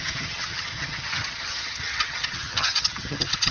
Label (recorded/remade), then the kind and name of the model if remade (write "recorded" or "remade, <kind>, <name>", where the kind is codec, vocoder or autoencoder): remade, vocoder, HiFi-GAN